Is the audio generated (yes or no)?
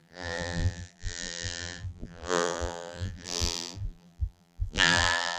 yes